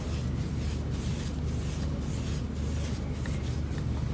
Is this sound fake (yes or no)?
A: no